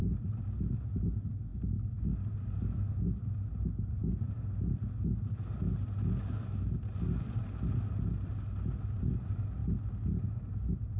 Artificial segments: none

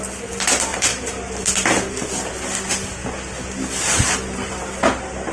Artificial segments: none

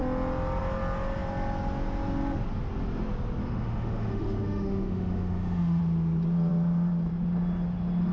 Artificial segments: 3.4-5.8 (autoencoder, DAC-VAE)

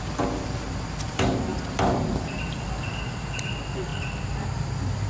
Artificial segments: 1.5-2.9 (vocoder, BigVGAN v2); 3.9-5.1

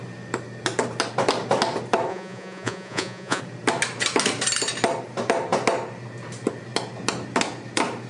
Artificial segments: 2.1-3.4 (vocoder, Vocos)

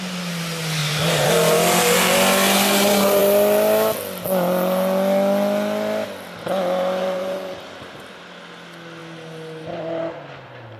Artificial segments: 0.8-2.1 (vocoder, BigVGAN v2); 7.0-8.2

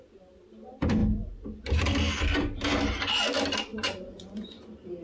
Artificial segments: 3.7-4.6 (vocoder, Vocos)